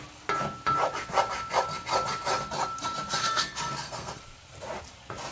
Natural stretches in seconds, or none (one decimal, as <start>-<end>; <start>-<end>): 0.0-3.2; 4.2-5.3